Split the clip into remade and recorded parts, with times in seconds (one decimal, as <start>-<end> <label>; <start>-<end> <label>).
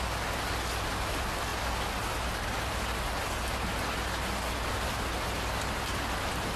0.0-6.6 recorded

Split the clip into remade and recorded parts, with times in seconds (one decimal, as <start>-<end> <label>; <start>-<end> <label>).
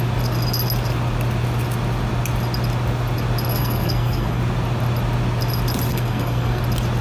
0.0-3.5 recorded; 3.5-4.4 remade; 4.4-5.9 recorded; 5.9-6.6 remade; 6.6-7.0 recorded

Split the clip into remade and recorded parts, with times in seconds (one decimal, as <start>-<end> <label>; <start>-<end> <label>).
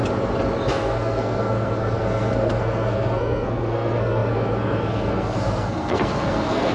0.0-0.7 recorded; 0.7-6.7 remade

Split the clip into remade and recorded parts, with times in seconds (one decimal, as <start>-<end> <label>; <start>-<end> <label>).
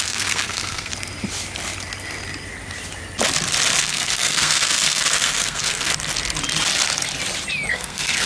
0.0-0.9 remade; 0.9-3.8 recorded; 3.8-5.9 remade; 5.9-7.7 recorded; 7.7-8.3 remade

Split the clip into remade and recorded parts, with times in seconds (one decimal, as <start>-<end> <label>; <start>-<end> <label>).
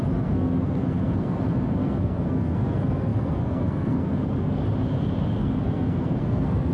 0.0-4.6 remade; 4.6-5.3 recorded; 5.3-6.7 remade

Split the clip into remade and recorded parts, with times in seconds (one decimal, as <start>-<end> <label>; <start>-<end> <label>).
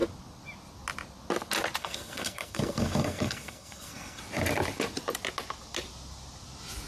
0.0-1.8 recorded; 1.8-4.2 remade; 4.2-6.9 recorded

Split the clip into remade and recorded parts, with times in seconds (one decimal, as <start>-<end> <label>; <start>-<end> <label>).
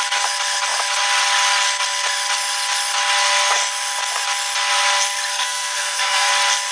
0.0-5.3 recorded; 5.3-6.3 remade; 6.3-6.7 recorded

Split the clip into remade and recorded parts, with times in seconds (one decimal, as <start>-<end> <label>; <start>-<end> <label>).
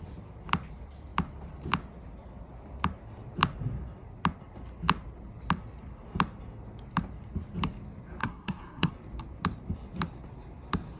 0.0-8.2 recorded; 8.2-8.9 remade; 8.9-11.0 recorded